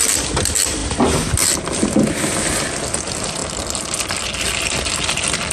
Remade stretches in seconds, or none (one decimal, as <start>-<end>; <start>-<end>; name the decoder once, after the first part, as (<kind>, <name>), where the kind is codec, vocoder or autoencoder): none

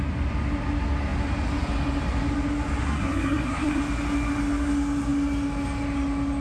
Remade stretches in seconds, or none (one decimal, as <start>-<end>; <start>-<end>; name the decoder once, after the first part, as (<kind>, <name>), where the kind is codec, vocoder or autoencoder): 2.8-3.8 (codec, SNAC)

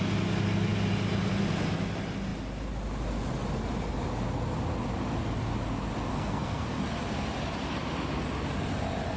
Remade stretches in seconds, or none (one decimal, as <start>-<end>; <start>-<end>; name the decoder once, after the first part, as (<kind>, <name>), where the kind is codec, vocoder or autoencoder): 6.1-6.8 (codec, SNAC)

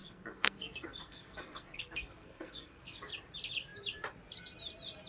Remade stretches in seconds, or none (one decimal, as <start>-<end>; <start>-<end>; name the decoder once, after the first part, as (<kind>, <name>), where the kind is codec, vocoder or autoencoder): 0.0-3.1 (codec, SNAC)

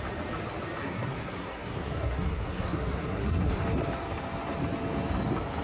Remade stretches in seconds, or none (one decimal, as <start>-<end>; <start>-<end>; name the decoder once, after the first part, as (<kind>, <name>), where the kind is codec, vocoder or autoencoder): 0.8-3.6 (codec, SNAC)